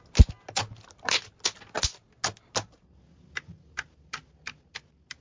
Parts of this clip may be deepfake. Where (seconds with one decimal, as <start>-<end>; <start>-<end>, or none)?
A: none

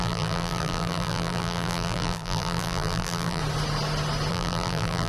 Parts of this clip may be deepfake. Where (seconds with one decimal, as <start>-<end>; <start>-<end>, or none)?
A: 0.0-3.4; 4.3-5.1

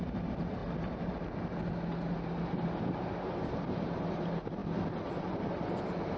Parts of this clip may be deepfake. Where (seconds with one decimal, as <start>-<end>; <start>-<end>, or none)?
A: 0.0-0.6; 2.7-4.6; 5.1-6.2

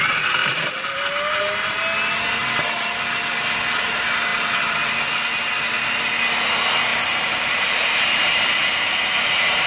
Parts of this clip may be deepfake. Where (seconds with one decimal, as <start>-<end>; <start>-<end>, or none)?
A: 0.4-1.0; 6.9-8.5